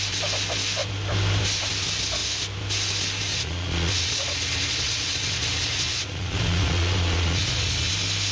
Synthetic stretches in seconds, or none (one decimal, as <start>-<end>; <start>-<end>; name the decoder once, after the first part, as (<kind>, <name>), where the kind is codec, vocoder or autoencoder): 3.3-7.9 (vocoder, Vocos)